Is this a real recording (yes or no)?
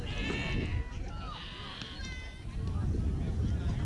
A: yes